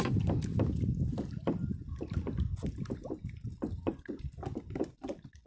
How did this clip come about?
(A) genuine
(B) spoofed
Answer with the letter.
A